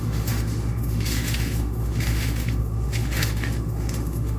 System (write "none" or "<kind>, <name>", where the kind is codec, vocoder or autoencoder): autoencoder, DAC-VAE